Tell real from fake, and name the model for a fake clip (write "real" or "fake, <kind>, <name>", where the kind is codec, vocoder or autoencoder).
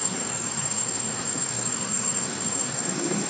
fake, codec, SNAC